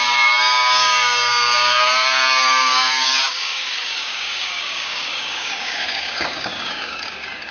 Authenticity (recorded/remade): remade